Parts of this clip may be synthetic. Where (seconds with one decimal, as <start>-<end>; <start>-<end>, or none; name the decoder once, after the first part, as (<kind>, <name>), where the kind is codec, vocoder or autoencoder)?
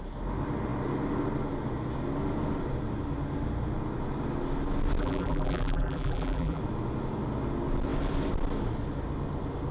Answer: 5.0-6.6 (vocoder, BigVGAN v2)